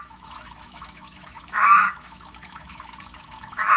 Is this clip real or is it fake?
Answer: fake